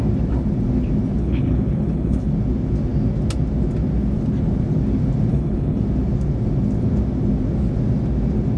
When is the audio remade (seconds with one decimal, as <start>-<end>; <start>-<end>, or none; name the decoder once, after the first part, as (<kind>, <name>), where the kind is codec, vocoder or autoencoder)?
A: 1.2-2.3 (codec, HILCodec); 5.3-5.8